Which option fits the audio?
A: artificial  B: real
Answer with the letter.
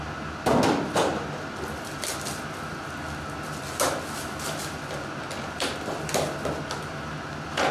B